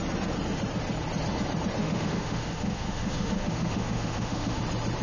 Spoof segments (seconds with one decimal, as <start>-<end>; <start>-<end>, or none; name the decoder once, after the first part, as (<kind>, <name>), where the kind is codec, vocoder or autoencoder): 1.8-4.6 (autoencoder, DAC-VAE)